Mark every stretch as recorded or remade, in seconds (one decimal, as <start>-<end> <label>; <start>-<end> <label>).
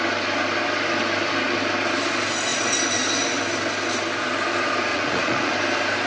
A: 0.0-4.9 recorded; 4.9-5.5 remade; 5.5-6.1 recorded